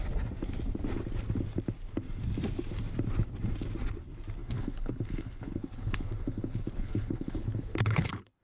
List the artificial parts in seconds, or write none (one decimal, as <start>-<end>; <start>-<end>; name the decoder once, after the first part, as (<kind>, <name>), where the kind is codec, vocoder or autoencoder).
4.4-8.4 (codec, HILCodec)